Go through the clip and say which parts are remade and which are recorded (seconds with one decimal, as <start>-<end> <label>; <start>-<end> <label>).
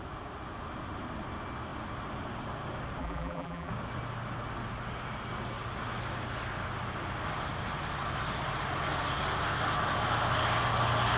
0.0-3.0 recorded; 3.0-3.7 remade; 3.7-11.2 recorded